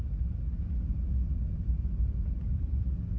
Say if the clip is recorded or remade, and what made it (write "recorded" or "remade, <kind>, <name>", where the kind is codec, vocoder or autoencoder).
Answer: recorded